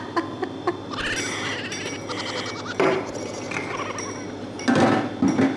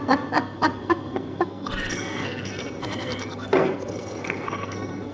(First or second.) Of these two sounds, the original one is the first